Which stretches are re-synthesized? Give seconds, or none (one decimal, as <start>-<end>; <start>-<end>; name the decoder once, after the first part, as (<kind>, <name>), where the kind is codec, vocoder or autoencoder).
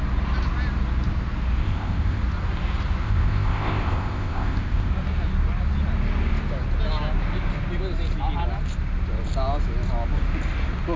1.6-2.2 (codec, ZipCodec); 3.0-4.9